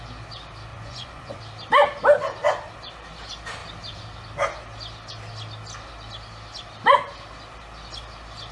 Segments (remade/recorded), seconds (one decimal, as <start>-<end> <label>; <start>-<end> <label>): 0.0-0.7 recorded; 0.7-1.4 remade; 1.4-8.5 recorded